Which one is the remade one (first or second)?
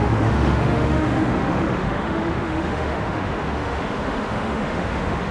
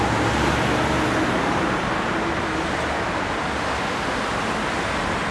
first